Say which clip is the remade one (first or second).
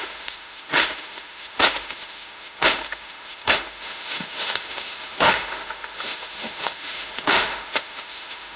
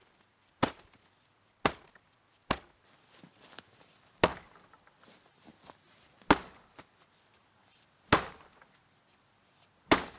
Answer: first